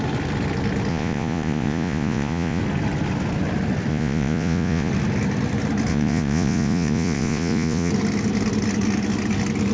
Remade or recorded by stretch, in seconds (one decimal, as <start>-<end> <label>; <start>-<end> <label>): 0.0-0.9 recorded; 0.9-2.6 remade; 2.6-3.9 recorded; 3.9-4.9 remade; 4.9-5.9 recorded; 5.9-7.9 remade; 7.9-9.7 recorded